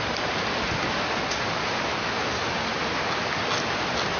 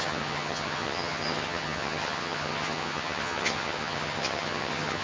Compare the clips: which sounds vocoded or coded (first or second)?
second